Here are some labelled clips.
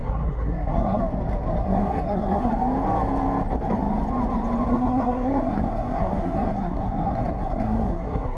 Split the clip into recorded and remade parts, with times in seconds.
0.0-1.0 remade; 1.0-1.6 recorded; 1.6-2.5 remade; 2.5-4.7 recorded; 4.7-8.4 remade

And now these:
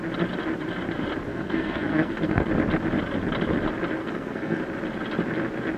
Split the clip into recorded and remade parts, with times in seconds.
0.0-1.3 recorded; 1.3-2.5 remade; 2.5-4.0 recorded; 4.0-4.6 remade; 4.6-5.8 recorded

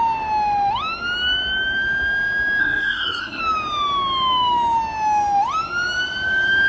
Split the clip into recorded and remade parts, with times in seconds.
0.0-2.6 recorded; 2.6-3.4 remade; 3.4-6.7 recorded

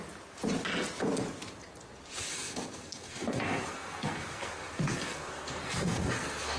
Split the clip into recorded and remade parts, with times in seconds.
0.0-2.3 recorded; 2.3-6.6 remade

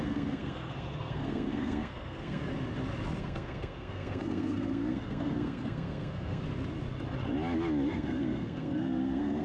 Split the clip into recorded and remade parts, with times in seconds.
0.0-2.5 remade; 2.5-3.2 recorded; 3.2-6.4 remade; 6.4-7.9 recorded; 7.9-9.4 remade